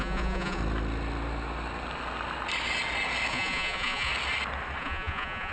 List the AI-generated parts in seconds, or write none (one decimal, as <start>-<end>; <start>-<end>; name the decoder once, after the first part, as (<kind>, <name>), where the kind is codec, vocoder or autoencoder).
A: 0.0-0.6 (vocoder, Vocos); 3.3-4.1; 4.8-5.5